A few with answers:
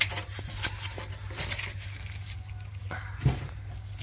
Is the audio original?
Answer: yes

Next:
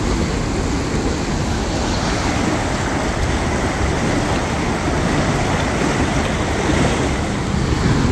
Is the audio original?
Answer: yes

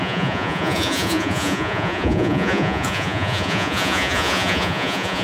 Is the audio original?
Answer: no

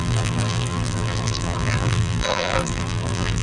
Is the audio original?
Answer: no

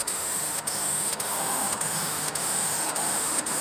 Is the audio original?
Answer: no